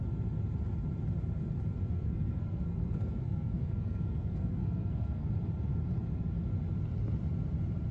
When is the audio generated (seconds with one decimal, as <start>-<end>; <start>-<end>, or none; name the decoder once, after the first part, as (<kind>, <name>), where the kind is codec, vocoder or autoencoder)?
1.8-5.3 (codec, SNAC)